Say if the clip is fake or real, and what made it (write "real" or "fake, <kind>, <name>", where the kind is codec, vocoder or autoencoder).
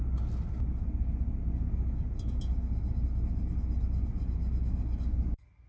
real